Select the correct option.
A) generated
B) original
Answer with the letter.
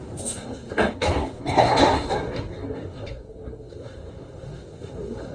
A